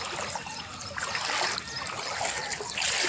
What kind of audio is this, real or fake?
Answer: real